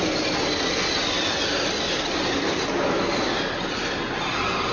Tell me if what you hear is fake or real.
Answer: real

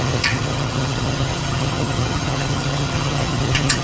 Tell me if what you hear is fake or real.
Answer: fake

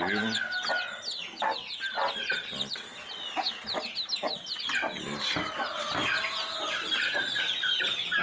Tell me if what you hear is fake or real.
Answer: real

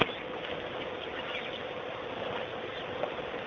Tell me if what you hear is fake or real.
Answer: real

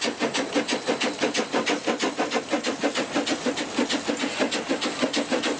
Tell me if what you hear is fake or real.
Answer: real